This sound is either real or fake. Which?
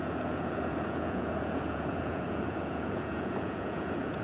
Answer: fake